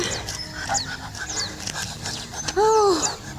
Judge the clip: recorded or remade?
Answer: recorded